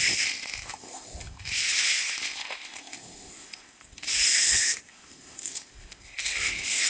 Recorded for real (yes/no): no